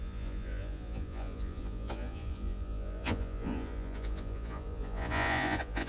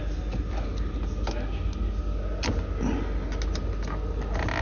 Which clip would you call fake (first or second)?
first